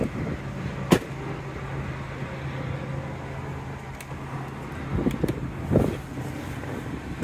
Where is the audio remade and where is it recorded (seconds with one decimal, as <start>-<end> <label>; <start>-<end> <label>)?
0.0-7.2 recorded